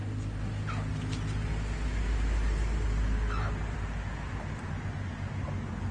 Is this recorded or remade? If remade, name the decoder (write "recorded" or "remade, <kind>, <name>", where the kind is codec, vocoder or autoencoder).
recorded